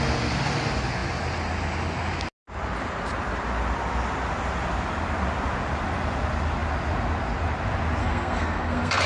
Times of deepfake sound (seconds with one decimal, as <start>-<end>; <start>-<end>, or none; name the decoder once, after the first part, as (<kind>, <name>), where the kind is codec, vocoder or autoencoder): 8.0-9.1 (codec, SNAC)